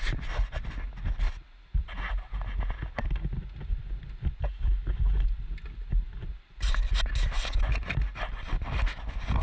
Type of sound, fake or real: real